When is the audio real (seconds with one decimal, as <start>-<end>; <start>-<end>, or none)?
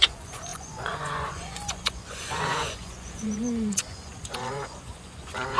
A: none